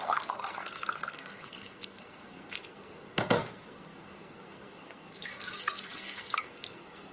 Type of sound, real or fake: fake